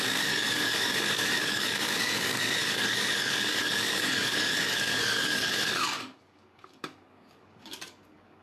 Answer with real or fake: fake